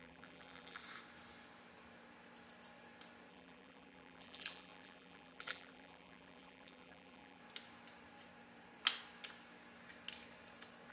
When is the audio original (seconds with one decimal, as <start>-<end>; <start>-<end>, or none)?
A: 0.8-3.3; 7.4-10.9